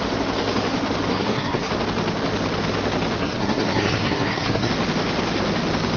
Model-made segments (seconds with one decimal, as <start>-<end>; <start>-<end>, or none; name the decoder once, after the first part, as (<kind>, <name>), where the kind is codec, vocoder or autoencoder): 1.1-1.7 (codec, SNAC); 3.2-4.7